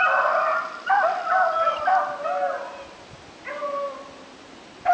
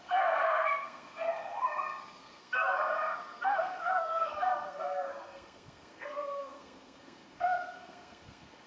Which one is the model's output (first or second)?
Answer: second